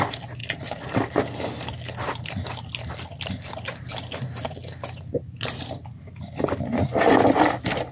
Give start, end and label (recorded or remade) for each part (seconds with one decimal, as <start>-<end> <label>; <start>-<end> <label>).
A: 0.0-7.9 recorded